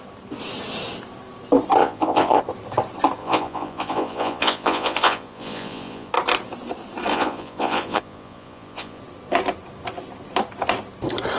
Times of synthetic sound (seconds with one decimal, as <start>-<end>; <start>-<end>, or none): 1.8-2.4; 3.2-6.1; 7.1-9.0